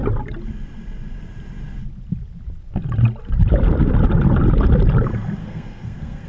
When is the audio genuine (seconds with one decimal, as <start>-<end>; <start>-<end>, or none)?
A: 0.0-5.4